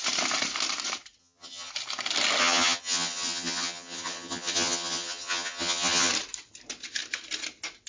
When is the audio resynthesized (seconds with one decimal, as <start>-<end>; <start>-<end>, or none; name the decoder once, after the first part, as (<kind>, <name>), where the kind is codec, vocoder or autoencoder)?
1.2-1.7 (vocoder, HiFi-GAN); 2.4-6.1